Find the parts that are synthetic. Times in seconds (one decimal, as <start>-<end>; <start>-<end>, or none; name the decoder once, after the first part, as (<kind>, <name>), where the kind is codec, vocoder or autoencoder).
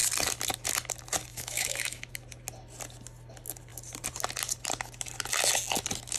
1.3-2.1 (autoencoder, DAC-VAE)